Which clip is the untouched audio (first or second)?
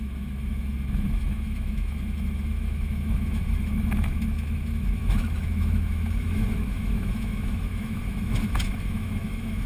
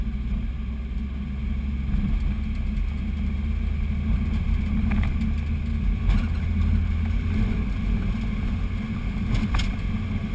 second